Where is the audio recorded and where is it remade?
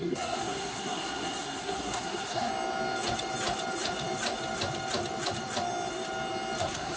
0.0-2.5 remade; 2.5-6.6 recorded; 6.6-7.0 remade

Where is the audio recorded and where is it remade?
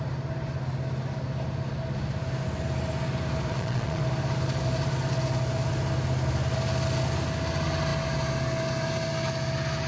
0.0-3.5 recorded; 3.5-4.0 remade; 4.0-9.9 recorded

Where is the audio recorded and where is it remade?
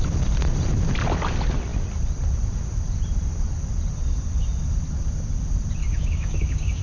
0.0-5.8 recorded; 5.8-6.8 remade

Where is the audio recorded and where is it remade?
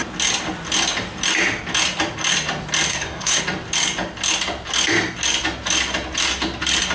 0.0-2.9 recorded; 2.9-3.4 remade; 3.4-6.9 recorded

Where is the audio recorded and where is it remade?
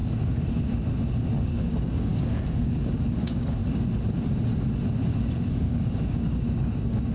0.0-1.4 recorded; 1.4-3.6 remade; 3.6-5.5 recorded; 5.5-7.1 remade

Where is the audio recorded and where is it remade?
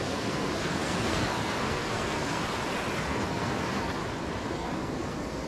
0.0-2.4 remade; 2.4-3.0 recorded; 3.0-4.0 remade; 4.0-4.5 recorded; 4.5-5.5 remade